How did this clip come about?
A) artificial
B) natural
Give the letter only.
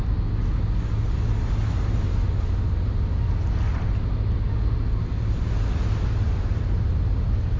B